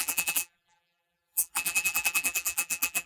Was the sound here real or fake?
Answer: fake